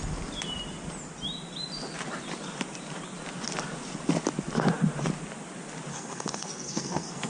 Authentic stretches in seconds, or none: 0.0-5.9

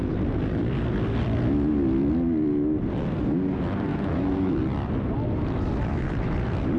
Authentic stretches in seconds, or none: 0.0-3.9; 4.5-6.8

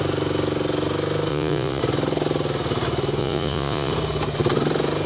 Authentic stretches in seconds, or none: 0.0-1.3; 1.8-3.2; 3.9-5.1

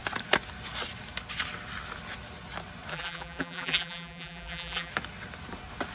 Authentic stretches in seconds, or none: 0.0-2.9; 4.9-5.9

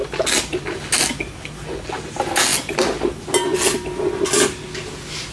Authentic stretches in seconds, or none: 0.0-5.3

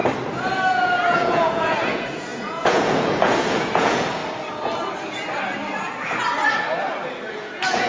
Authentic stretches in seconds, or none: 0.0-0.7; 4.2-7.3

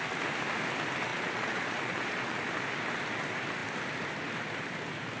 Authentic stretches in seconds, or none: 0.0-1.1; 2.4-5.2